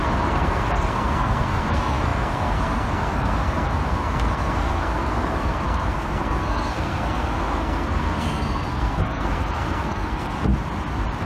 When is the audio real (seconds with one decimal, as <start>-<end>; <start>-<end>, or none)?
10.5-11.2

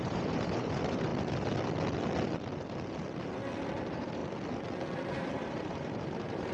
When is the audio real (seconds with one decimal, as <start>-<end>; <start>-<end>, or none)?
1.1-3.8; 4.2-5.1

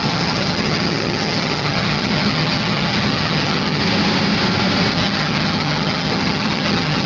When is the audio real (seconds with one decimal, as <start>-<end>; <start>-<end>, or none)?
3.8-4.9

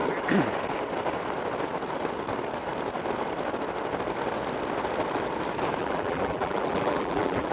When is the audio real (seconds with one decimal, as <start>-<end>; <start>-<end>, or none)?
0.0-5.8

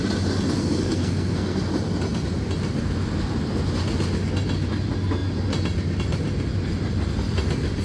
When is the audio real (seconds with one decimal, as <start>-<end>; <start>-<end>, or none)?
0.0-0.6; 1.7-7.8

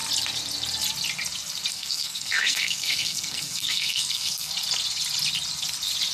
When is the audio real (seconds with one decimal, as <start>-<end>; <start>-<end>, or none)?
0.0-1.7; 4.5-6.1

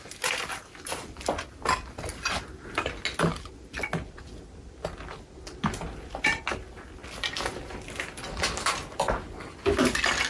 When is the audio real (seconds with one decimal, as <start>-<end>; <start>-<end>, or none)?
0.0-10.3

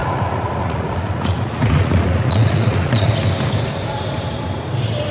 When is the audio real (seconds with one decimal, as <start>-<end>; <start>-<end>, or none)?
3.1-5.1